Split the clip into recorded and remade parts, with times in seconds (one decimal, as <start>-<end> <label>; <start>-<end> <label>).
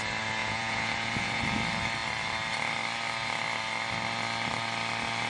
0.0-0.4 recorded; 0.4-1.4 remade; 1.4-5.3 recorded